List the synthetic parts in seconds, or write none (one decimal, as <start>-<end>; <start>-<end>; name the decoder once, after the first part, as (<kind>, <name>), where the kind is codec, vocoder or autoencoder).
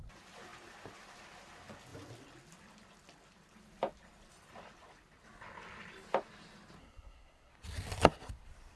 6.8-7.5 (codec, SNAC)